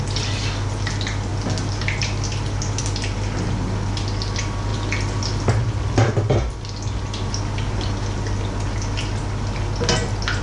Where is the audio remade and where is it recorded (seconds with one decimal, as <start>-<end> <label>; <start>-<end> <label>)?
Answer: 0.0-10.4 recorded